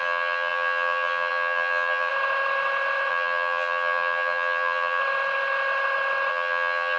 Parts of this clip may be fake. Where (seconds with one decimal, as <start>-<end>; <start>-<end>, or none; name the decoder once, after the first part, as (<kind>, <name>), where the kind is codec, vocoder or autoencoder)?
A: 0.0-2.1 (vocoder, HiFi-GAN); 3.1-5.0; 6.3-7.0